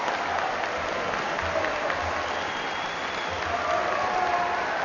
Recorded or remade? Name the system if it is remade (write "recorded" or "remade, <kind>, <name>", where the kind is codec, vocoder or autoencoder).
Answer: recorded